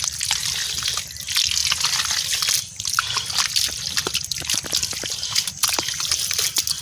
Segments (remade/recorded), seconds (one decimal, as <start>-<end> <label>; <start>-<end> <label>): 0.0-0.4 recorded; 0.4-1.0 remade; 1.0-6.8 recorded